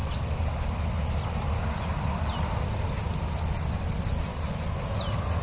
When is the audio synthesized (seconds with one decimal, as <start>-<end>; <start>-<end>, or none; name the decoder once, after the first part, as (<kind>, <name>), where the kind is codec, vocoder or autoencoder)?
none